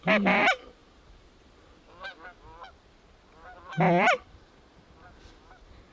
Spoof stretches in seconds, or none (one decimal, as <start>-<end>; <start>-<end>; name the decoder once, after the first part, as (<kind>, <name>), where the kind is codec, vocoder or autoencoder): none